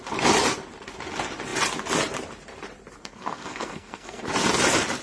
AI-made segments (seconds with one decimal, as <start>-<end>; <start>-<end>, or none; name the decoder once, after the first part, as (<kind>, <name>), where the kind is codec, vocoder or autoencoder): 3.0-4.2 (codec, SNAC)